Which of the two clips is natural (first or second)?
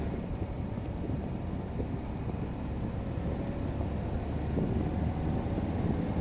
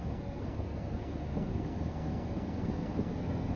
first